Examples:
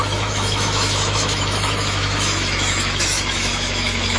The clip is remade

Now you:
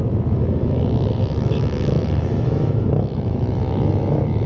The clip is remade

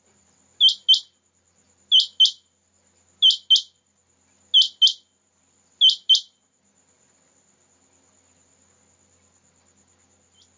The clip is recorded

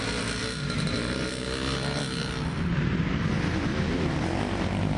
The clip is recorded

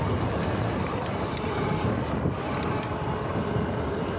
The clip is recorded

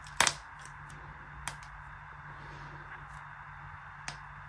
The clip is recorded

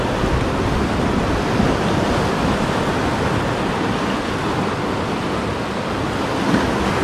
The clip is recorded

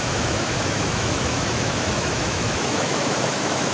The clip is remade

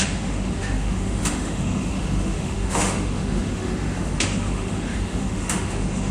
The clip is remade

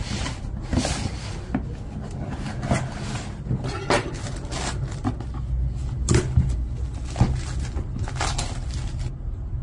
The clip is recorded